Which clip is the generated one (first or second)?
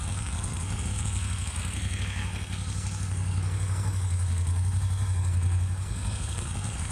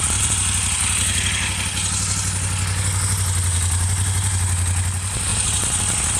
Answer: first